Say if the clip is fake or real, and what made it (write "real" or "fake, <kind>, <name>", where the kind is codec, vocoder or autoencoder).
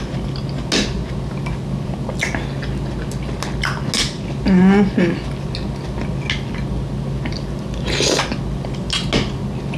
real